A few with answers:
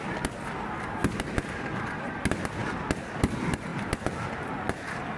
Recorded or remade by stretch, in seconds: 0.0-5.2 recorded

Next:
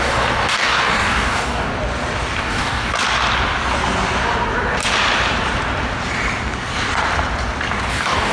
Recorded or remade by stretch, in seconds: 0.0-1.7 remade; 1.7-2.4 recorded; 2.4-2.9 remade; 2.9-7.9 recorded; 7.9-8.3 remade

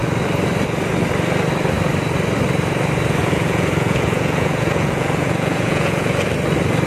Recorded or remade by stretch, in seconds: 0.0-3.2 recorded; 3.2-6.3 remade; 6.3-6.9 recorded